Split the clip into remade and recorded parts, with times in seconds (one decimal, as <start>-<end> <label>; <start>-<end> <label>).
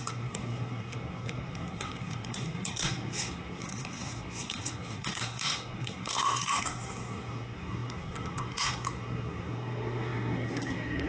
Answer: 0.0-11.1 remade